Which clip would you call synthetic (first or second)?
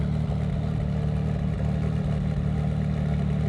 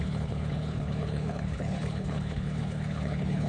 second